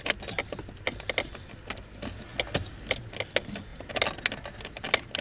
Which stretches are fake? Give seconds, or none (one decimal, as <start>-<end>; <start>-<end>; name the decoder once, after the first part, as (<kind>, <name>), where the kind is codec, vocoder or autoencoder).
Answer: none